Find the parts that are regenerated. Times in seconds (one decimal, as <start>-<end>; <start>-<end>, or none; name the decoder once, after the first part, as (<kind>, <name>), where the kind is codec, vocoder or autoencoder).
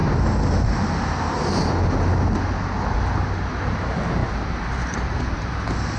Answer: none